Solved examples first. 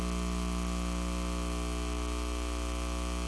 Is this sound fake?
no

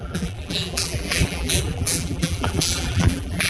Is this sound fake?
yes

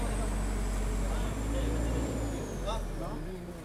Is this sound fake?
no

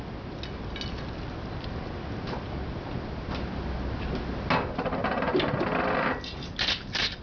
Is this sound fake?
no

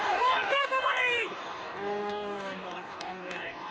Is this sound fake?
yes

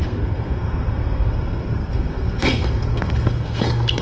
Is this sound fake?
yes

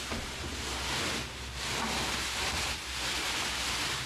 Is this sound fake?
no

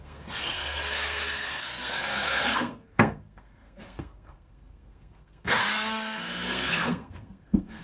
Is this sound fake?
yes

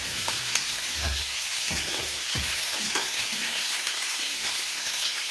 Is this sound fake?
yes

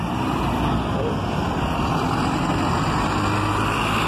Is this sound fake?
no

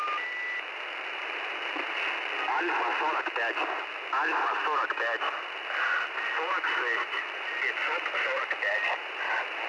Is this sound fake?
no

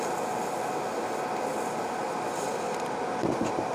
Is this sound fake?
no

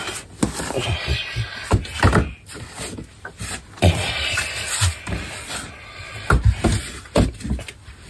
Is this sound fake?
no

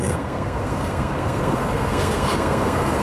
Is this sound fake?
yes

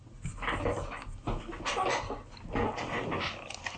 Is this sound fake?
no